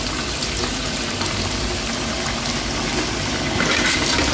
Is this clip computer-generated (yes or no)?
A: no